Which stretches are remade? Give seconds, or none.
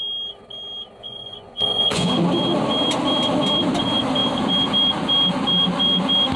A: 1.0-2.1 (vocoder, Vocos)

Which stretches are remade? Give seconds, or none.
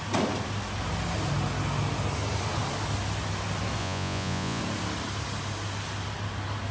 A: 3.8-4.6 (vocoder, Vocos)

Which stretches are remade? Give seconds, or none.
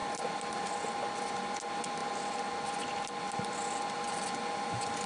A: none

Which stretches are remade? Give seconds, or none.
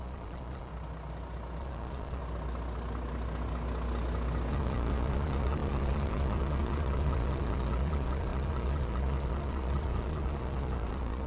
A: 0.0-0.7 (vocoder, Vocos); 1.6-2.2; 4.5-11.3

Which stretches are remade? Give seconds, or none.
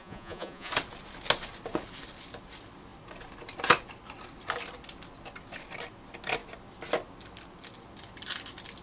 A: 0.0-0.7 (vocoder, Vocos)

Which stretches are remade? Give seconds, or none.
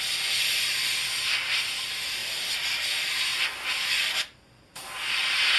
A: none